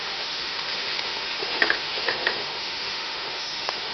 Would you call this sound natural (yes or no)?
no